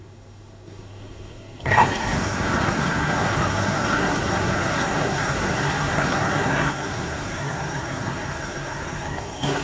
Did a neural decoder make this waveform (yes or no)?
yes